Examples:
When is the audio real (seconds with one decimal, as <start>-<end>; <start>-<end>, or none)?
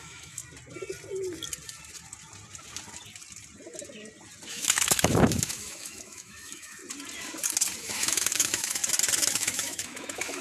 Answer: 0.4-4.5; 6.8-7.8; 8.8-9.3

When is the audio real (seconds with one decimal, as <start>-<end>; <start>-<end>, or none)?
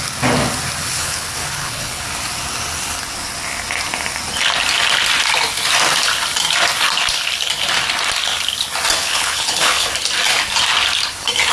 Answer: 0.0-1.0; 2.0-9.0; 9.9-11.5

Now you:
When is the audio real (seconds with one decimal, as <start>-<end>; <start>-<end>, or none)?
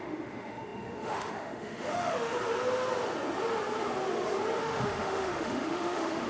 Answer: 2.3-4.6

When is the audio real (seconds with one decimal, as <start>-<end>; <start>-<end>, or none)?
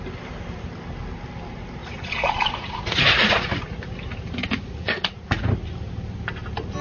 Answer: 0.0-1.8; 3.9-4.4; 5.5-6.8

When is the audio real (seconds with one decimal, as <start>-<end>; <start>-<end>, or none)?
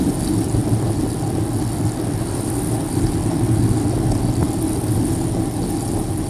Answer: 0.0-6.3